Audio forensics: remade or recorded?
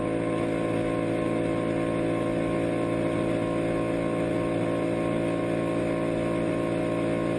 recorded